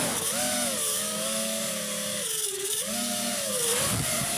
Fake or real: fake